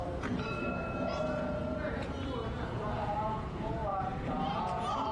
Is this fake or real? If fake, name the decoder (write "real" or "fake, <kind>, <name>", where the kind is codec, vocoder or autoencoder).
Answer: fake, vocoder, Vocos